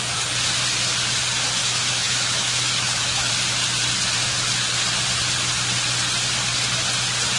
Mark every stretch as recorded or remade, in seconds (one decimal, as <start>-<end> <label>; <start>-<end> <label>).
0.0-1.6 recorded; 1.6-3.3 remade; 3.3-7.4 recorded